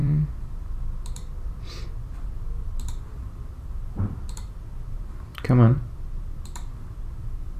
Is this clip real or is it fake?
fake